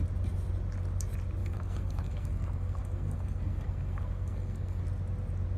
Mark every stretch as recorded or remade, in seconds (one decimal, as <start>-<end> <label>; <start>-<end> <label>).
0.0-1.4 recorded; 1.4-4.8 remade; 4.8-5.6 recorded